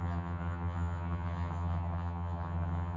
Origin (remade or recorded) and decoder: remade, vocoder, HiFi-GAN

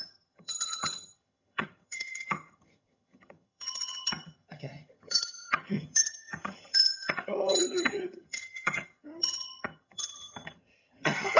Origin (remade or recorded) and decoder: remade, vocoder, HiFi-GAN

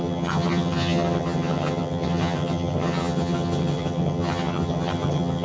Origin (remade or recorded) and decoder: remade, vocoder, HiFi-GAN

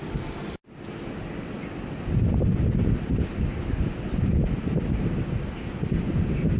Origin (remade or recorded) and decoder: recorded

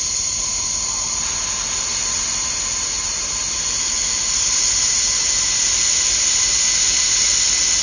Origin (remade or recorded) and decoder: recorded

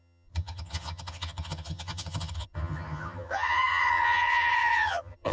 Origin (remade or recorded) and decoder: remade, vocoder, HiFi-GAN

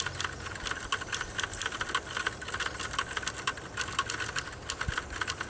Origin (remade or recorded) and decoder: recorded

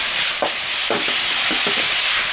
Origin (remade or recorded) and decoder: recorded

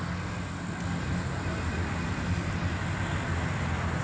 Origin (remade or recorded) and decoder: recorded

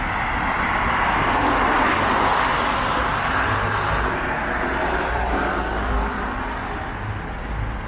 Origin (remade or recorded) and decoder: recorded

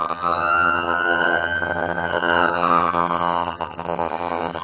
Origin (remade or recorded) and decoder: remade, vocoder, HiFi-GAN